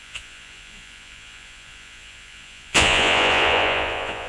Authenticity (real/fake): fake